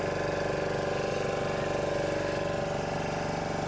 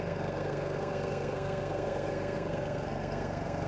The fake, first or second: second